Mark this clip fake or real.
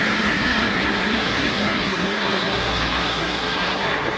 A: fake